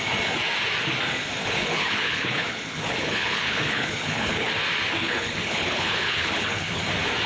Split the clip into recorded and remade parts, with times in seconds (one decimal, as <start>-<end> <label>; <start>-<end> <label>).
0.0-1.4 recorded; 1.4-4.5 remade; 4.5-5.0 recorded; 5.0-6.8 remade; 6.8-7.3 recorded